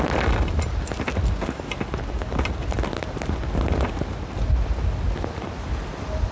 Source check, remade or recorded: recorded